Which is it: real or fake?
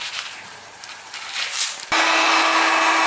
real